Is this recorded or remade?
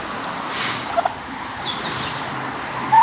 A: recorded